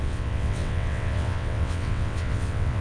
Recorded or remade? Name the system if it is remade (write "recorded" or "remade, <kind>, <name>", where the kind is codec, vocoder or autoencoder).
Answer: remade, vocoder, WaveNeXt